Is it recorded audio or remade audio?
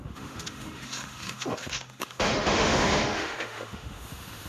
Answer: remade